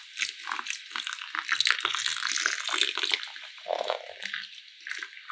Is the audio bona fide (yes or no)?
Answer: yes